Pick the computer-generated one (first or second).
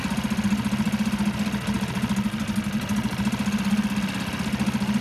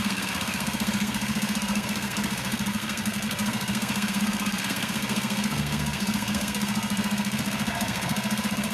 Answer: second